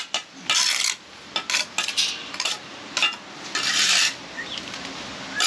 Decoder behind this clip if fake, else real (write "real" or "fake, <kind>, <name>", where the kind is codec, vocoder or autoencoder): real